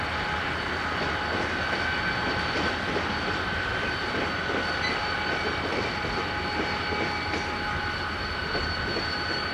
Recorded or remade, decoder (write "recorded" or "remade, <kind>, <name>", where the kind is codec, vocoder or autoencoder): recorded